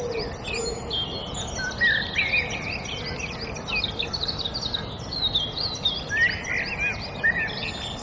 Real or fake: real